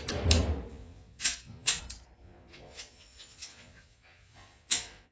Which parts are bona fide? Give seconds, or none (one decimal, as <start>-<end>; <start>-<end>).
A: 0.0-0.7; 1.8-2.2